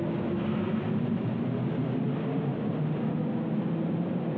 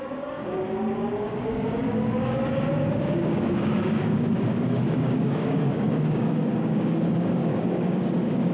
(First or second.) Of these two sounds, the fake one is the second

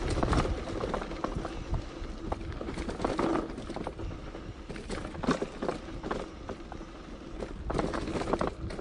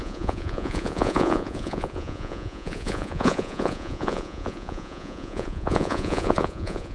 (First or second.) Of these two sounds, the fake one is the second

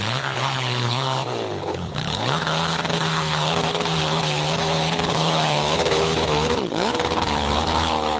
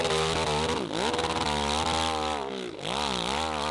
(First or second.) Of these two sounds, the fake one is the first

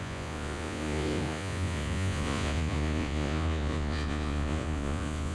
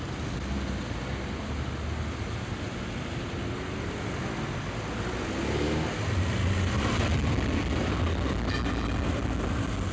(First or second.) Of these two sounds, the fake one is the first